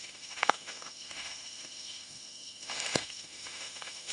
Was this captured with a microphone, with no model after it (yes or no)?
no